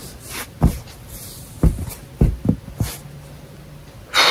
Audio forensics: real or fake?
real